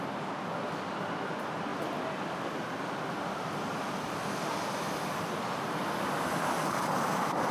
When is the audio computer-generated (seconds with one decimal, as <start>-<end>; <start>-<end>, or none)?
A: 1.7-3.7